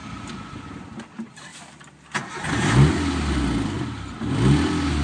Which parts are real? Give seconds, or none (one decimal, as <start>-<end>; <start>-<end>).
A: 0.0-5.0